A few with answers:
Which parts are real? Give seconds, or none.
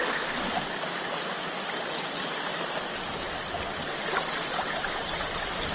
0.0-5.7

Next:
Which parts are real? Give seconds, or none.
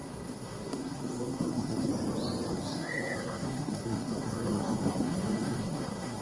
1.9-2.5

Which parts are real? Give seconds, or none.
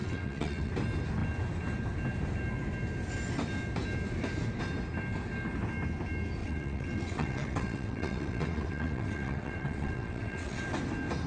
0.7-6.4; 10.6-11.3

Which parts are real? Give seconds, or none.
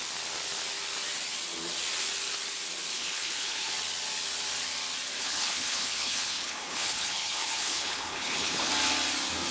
0.0-2.9; 3.7-5.2; 8.7-9.5